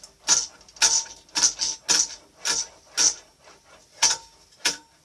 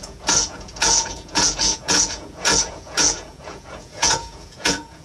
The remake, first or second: second